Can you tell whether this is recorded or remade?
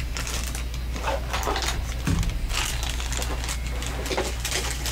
recorded